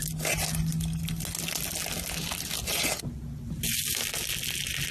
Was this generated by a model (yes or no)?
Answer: no